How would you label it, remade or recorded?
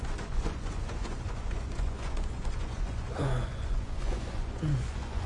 remade